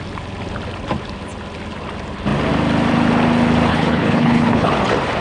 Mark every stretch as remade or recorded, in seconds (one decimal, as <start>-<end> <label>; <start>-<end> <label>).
0.0-3.7 recorded; 3.7-4.7 remade; 4.7-5.2 recorded